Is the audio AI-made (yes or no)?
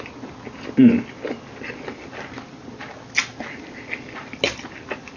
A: no